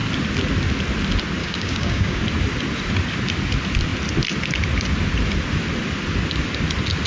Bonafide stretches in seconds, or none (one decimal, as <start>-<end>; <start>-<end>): 0.0-1.4; 2.2-7.1